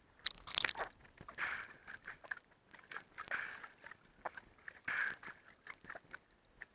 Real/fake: real